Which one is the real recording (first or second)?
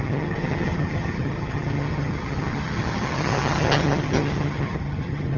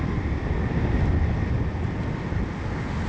second